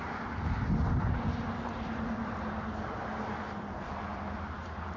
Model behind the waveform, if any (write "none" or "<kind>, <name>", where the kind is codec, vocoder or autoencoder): none